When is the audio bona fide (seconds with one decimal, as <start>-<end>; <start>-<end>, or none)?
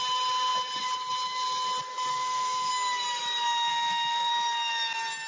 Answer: 0.0-2.1; 2.7-3.7; 4.3-5.3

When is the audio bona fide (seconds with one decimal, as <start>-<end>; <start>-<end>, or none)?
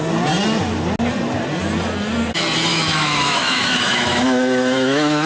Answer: 0.0-2.7